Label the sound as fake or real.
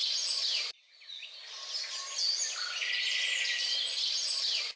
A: real